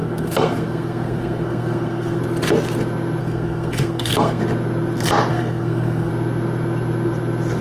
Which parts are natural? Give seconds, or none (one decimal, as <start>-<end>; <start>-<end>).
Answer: 2.2-3.2; 4.4-5.3; 6.1-7.6